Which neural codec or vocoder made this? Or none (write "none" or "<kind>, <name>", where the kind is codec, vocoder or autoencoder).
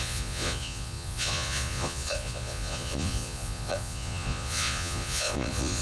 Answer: vocoder, Vocos